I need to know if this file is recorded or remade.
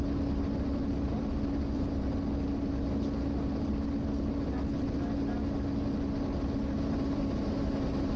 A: recorded